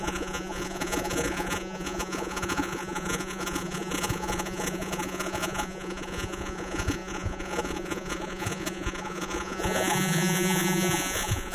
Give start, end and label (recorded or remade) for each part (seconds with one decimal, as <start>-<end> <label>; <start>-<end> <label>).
0.0-11.5 remade